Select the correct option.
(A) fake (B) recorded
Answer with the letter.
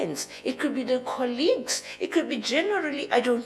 A